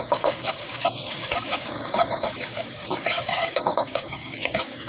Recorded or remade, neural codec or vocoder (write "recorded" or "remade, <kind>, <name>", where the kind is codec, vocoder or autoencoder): remade, codec, DAC